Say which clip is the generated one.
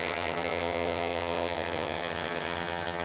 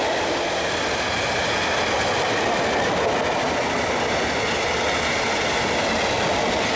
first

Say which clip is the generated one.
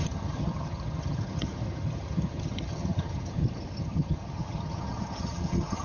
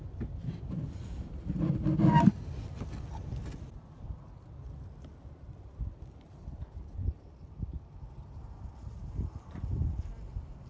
first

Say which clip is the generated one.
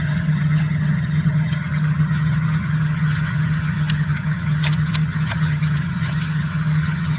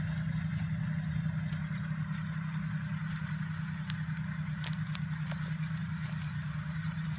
first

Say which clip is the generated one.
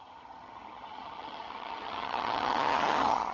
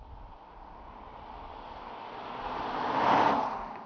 first